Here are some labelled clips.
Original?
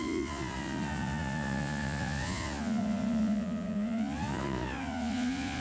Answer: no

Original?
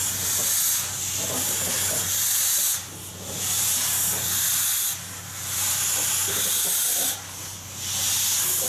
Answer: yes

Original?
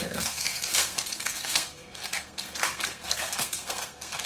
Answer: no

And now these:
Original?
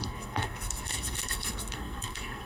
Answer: no